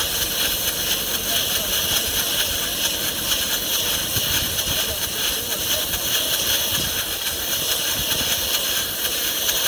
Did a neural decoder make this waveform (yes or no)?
no